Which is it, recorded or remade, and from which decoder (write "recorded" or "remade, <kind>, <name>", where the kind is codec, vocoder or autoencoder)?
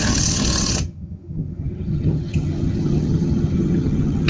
remade, vocoder, HiFi-GAN